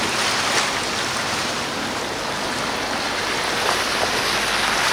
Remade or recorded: recorded